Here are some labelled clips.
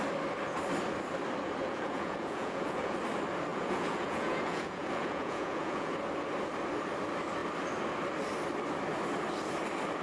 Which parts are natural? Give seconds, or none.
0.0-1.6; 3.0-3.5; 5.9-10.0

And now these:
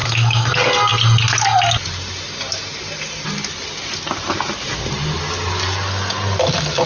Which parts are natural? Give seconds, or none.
0.5-6.9

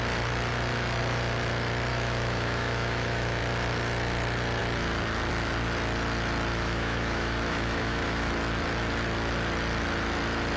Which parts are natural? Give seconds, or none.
0.0-1.9; 3.4-6.5; 8.3-10.6

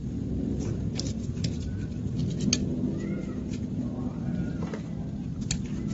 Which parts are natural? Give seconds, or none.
2.2-5.9

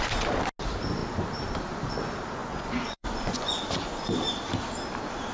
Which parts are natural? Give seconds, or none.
0.0-2.4; 3.6-5.3

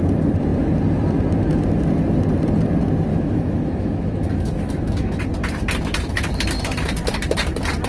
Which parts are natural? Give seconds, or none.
0.0-3.1; 5.2-7.9

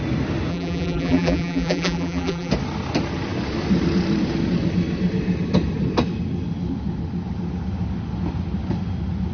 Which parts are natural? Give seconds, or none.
0.0-0.5; 2.5-9.3